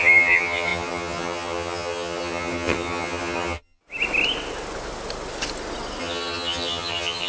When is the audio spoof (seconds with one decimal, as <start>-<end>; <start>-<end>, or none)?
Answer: 0.0-3.8; 6.0-7.3